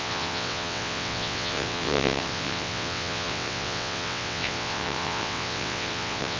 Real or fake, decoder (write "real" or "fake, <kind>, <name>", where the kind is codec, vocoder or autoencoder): fake, vocoder, WaveNeXt